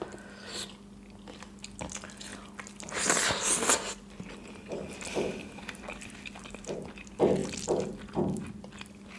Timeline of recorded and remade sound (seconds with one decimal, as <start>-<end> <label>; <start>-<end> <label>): 0.0-9.2 recorded